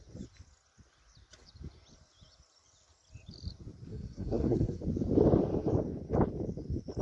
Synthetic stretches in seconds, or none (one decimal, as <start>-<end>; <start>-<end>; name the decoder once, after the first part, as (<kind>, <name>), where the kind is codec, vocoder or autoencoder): 3.9-4.8 (codec, SNAC)